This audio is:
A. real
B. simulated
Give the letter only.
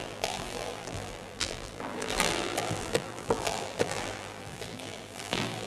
B